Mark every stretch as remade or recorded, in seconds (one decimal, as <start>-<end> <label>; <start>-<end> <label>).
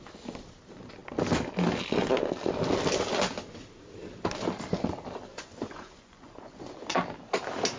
0.0-5.3 recorded; 5.3-7.0 remade; 7.0-7.8 recorded